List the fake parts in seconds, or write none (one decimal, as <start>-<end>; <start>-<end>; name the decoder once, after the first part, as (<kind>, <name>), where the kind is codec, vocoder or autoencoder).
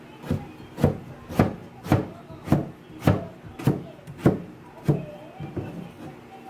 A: none